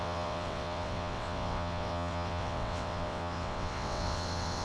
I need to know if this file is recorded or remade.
remade